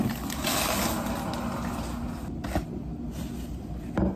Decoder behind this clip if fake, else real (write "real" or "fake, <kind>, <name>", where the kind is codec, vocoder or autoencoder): real